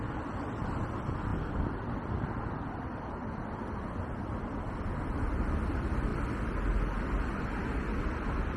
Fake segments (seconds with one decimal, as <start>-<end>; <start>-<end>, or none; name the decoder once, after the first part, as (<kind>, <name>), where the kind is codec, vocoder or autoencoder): 0.0-1.3 (vocoder, BigVGAN v2); 4.7-6.1; 8.0-8.6